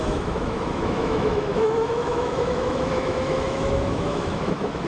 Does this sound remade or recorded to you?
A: remade